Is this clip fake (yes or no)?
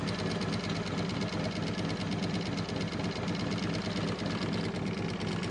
no